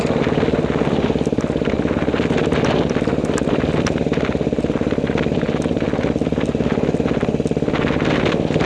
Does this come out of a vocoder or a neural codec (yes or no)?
no